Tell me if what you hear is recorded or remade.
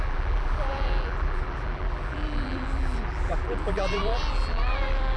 remade